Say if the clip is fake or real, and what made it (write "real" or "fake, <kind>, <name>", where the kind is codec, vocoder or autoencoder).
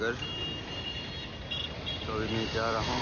real